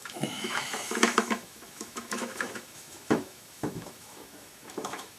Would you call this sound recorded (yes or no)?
no